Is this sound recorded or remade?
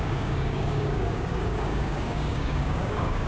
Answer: remade